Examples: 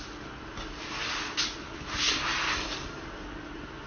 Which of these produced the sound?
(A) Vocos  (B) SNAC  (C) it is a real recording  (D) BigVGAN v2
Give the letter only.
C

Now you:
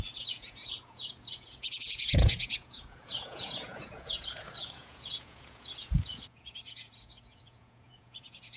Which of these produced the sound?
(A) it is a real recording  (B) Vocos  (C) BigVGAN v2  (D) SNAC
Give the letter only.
B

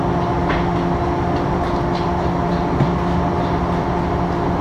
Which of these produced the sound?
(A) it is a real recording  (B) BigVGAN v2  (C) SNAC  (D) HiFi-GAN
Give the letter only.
A